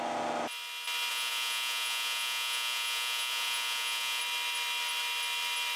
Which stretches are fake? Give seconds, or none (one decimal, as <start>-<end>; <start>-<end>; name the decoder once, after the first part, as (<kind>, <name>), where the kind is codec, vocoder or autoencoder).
1.1-4.2 (vocoder, Vocos)